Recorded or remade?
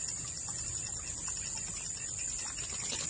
recorded